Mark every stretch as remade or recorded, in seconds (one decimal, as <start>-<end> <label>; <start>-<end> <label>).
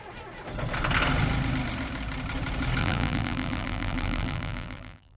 0.0-2.8 recorded; 2.8-5.2 remade